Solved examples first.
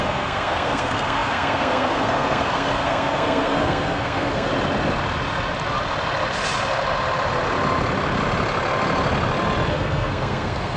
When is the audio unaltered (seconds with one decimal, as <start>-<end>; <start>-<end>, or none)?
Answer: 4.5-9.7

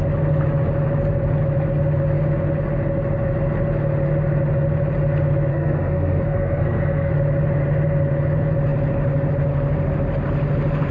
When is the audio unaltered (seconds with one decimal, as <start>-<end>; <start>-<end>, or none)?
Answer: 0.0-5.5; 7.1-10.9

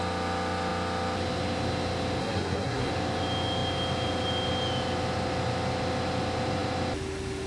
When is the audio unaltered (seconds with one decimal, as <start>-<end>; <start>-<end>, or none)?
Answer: 0.0-2.2; 2.9-7.5